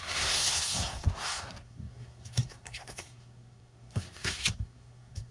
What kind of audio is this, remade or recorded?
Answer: remade